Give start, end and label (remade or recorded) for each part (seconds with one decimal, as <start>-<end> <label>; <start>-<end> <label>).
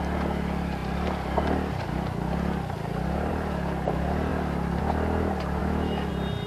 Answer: 0.0-5.6 recorded; 5.6-6.1 remade; 6.1-6.5 recorded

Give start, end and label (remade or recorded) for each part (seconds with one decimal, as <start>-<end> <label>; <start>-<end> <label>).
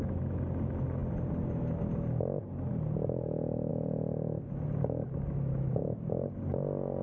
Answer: 0.0-7.0 recorded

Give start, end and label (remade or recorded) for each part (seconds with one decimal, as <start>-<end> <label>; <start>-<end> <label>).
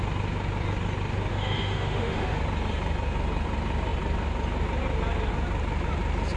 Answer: 0.0-1.3 recorded; 1.3-2.4 remade; 2.4-6.4 recorded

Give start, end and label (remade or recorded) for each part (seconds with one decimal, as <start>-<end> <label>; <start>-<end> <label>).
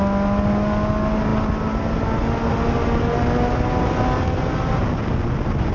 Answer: 0.0-5.7 recorded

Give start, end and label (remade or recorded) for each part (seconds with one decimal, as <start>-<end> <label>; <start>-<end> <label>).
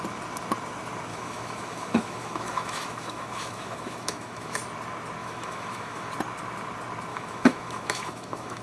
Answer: 0.0-1.1 recorded; 1.1-4.6 remade; 4.6-5.2 recorded; 5.2-6.1 remade; 6.1-7.1 recorded; 7.1-8.6 remade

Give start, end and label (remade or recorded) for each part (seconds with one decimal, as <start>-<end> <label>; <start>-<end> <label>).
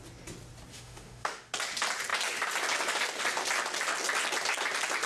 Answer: 0.0-0.7 recorded; 0.7-1.5 remade; 1.5-5.1 recorded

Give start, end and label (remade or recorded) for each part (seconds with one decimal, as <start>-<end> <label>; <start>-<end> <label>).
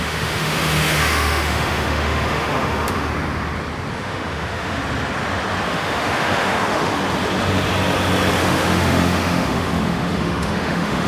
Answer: 0.0-3.1 remade; 3.1-3.9 recorded; 3.9-4.8 remade; 4.8-5.7 recorded; 5.7-6.9 remade; 6.9-8.4 recorded; 8.4-11.1 remade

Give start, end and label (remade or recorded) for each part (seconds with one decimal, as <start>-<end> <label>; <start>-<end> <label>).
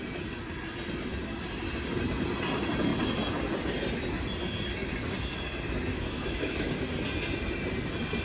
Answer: 0.0-5.9 recorded; 5.9-6.7 remade; 6.7-8.2 recorded